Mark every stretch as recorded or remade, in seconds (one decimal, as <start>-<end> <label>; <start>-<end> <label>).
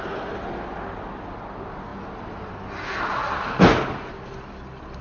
0.0-5.0 recorded